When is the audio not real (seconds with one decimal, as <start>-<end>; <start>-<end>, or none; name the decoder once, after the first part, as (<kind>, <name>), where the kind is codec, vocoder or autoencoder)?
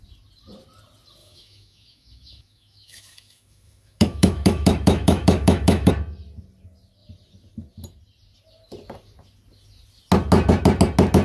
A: 1.2-5.9 (autoencoder, DAC-VAE)